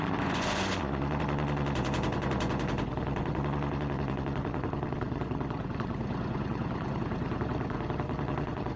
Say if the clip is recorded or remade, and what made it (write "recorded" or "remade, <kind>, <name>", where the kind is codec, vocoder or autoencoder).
remade, vocoder, Vocos